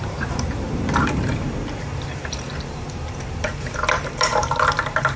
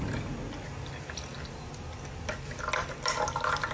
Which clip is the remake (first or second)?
first